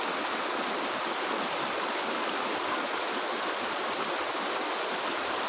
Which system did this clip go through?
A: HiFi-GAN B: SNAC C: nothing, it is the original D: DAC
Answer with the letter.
C